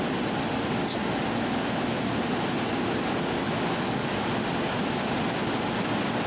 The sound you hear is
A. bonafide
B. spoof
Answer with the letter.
A